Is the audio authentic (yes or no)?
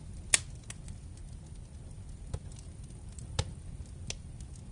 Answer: yes